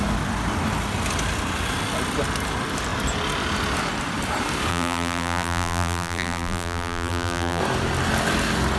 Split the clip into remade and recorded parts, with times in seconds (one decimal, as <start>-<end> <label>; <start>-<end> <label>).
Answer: 0.0-4.7 recorded; 4.7-7.6 remade; 7.6-8.8 recorded